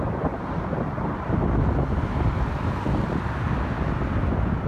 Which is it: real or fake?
real